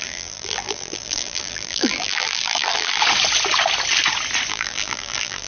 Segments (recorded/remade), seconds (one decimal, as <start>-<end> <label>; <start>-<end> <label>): 0.0-3.0 remade; 3.0-4.5 recorded; 4.5-5.5 remade